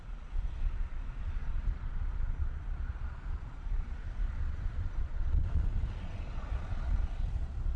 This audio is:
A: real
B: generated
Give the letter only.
B